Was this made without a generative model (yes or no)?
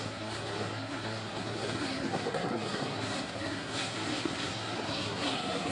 no